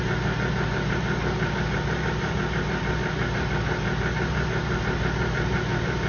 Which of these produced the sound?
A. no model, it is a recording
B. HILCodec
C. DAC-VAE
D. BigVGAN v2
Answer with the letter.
D